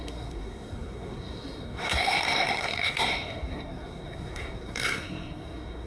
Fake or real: fake